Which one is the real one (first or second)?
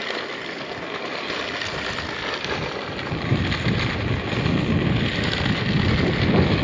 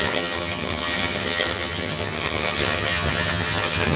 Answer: first